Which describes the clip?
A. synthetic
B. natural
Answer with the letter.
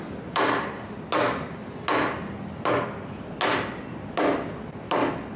B